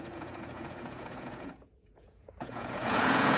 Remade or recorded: remade